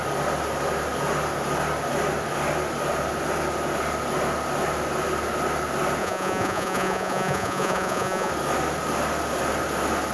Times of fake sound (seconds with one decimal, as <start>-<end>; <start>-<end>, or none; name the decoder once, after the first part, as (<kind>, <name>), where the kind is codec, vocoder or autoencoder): 6.0-8.3 (vocoder, Vocos)